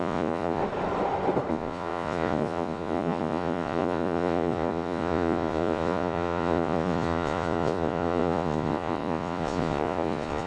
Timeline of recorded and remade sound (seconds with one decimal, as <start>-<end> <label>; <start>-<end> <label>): 0.0-0.6 remade; 0.6-1.5 recorded; 1.5-10.5 remade